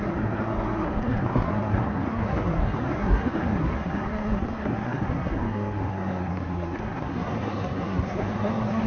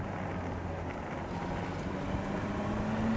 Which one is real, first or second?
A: second